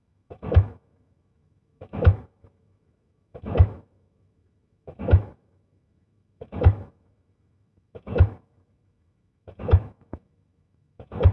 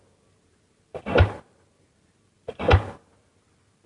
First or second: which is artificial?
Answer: first